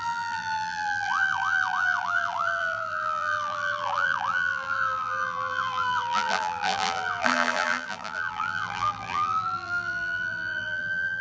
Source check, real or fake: fake